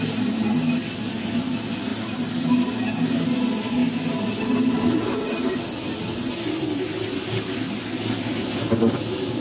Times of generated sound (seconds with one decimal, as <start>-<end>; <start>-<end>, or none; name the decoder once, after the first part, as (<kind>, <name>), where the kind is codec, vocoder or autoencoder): none

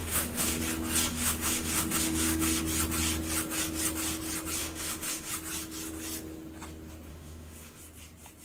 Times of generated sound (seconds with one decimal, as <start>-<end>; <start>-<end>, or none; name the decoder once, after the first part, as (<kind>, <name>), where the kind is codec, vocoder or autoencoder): 0.0-0.6 (autoencoder, DAC-VAE); 1.1-2.6; 4.6-5.3; 7.1-7.8

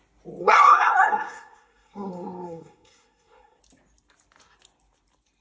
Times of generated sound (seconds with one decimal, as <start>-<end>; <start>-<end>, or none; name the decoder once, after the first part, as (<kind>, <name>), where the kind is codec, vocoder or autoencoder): 0.4-3.6 (codec, SNAC)

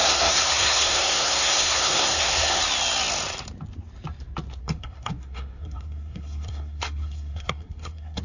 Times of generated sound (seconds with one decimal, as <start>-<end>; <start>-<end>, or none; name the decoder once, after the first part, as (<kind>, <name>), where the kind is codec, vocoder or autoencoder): 0.0-2.6 (codec, SNAC); 4.6-8.2

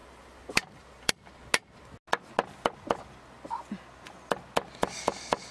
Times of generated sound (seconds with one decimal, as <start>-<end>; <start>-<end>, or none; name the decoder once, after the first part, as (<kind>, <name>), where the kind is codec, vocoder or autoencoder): 0.0-1.1 (vocoder, BigVGAN v2)